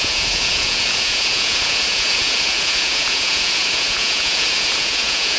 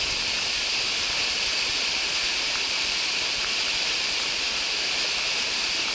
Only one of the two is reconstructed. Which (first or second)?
first